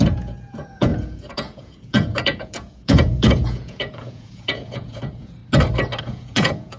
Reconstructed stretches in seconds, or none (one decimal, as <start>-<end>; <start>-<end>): 0.0-5.4; 6.0-6.8